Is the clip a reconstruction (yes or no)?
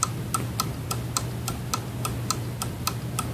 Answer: no